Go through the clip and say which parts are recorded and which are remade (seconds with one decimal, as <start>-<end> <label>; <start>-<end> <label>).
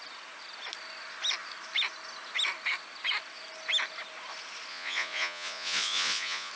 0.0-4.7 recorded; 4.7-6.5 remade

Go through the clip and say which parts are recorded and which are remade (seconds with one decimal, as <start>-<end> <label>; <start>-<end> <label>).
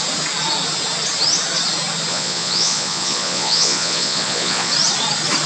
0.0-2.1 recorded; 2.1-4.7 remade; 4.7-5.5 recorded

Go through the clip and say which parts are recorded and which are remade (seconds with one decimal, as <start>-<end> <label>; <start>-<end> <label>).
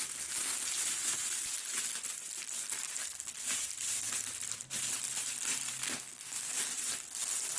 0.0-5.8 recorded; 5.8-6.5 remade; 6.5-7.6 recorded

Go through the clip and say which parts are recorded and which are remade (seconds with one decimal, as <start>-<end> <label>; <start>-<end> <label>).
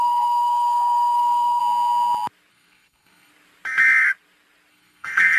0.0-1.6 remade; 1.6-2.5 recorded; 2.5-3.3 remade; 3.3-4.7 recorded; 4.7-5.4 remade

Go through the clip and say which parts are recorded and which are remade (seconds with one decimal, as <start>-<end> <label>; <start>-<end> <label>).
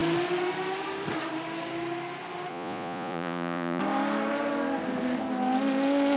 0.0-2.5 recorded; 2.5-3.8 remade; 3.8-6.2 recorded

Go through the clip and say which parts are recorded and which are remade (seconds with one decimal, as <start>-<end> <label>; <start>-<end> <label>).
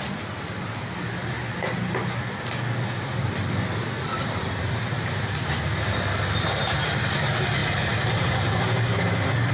0.0-4.1 recorded; 4.1-5.6 remade; 5.6-7.6 recorded; 7.6-8.3 remade; 8.3-9.5 recorded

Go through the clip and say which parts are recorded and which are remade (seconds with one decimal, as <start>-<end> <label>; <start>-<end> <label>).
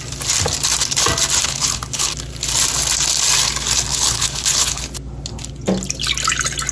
0.0-1.4 recorded; 1.4-2.1 remade; 2.1-3.9 recorded; 3.9-4.8 remade; 4.8-6.7 recorded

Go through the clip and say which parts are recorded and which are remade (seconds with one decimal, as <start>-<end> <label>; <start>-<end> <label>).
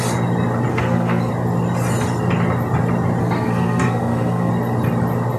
0.0-0.7 recorded; 0.7-1.3 remade; 1.3-3.2 recorded; 3.2-4.5 remade; 4.5-5.4 recorded